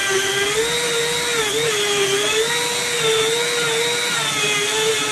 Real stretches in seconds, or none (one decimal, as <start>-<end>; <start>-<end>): 0.0-5.1